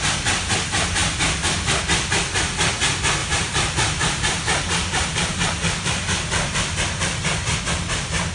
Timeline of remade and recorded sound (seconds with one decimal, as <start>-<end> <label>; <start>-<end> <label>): 0.0-3.2 recorded; 3.2-7.6 remade; 7.6-8.3 recorded